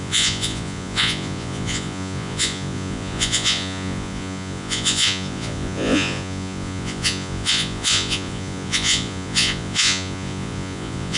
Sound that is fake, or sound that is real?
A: fake